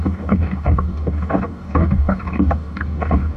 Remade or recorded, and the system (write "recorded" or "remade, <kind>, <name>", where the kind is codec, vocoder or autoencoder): remade, codec, DAC